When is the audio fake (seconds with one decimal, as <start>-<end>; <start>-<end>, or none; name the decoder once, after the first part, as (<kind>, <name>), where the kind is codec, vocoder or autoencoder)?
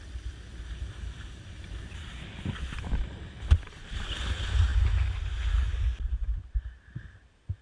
none